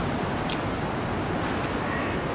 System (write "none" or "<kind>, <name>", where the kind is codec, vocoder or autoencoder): none